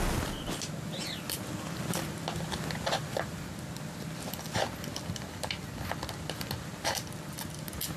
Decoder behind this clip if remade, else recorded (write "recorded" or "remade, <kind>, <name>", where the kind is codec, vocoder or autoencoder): recorded